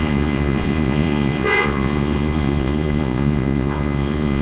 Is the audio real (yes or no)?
no